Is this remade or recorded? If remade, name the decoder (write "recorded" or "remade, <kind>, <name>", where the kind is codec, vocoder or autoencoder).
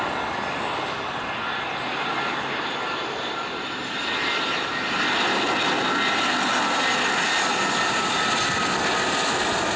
recorded